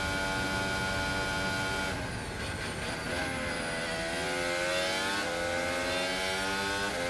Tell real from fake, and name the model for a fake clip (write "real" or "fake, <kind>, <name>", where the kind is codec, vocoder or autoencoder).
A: real